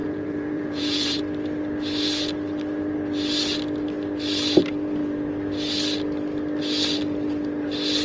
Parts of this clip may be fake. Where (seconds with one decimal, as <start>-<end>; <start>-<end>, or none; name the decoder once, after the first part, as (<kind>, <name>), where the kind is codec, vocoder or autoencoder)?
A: 0.0-1.2 (vocoder, Vocos)